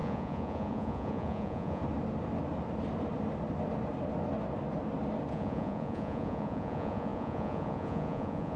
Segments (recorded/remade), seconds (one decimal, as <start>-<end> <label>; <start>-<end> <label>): 0.0-1.8 remade; 1.8-5.3 recorded; 5.3-8.6 remade